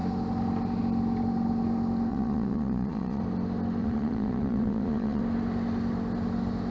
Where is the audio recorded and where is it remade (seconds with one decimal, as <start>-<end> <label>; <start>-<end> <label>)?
0.0-2.1 recorded; 2.1-3.2 remade; 3.2-3.8 recorded; 3.8-5.2 remade; 5.2-6.7 recorded